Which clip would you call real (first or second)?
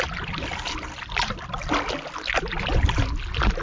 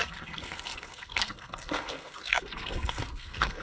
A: first